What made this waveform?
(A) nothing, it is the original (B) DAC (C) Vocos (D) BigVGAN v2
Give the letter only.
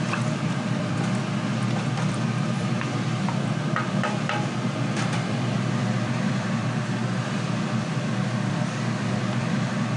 D